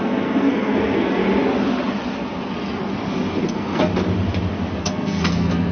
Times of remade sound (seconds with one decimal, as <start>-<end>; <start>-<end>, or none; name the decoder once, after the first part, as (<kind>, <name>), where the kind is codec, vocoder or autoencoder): 0.0-1.2 (codec, SNAC); 3.4-3.9; 4.8-5.7

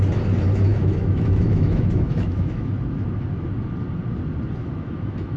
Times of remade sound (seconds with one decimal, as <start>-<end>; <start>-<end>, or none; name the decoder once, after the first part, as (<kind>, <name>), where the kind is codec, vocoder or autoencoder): 0.7-2.7 (autoencoder, DAC-VAE); 4.6-5.4

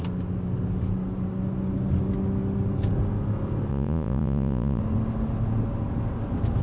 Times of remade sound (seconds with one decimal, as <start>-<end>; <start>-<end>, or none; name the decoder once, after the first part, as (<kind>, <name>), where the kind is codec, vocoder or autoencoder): 3.7-4.8 (vocoder, Vocos)

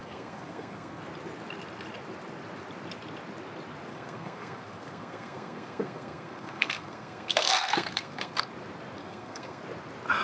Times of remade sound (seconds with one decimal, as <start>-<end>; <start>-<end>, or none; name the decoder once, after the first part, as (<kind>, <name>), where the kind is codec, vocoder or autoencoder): 0.0-1.0 (codec, SNAC); 3.9-8.5; 9.0-9.6

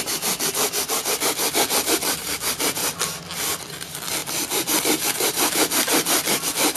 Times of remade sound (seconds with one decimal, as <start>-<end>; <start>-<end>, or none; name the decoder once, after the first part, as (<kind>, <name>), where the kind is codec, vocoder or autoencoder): 0.0-2.8 (vocoder, BigVGAN v2); 3.8-4.2; 4.8-6.8

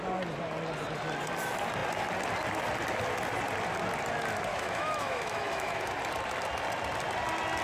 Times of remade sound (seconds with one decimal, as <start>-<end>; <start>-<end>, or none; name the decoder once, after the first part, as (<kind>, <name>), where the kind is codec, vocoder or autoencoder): 4.5-5.8 (autoencoder, DAC-VAE)